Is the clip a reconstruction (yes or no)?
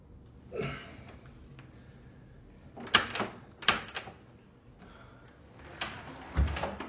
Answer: no